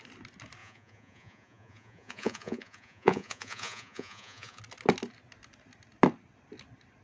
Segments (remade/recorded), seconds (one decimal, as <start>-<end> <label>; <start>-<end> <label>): 0.0-0.6 recorded; 0.6-4.6 remade; 4.6-7.0 recorded